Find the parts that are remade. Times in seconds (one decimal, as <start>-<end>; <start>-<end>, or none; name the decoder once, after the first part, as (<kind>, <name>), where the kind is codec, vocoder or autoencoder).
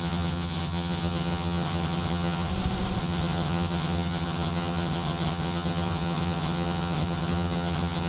0.0-2.5 (vocoder, HiFi-GAN); 3.0-8.1